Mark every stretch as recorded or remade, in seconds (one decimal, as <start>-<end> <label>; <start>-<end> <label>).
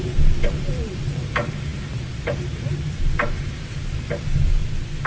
0.0-4.6 remade; 4.6-5.1 recorded